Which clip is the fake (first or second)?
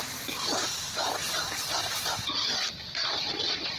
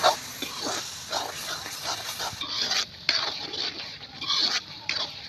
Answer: first